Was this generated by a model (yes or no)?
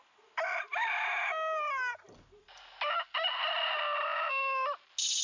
no